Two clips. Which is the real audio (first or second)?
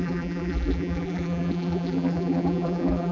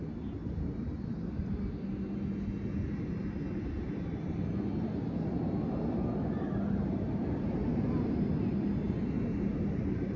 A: second